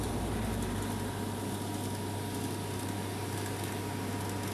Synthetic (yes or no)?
no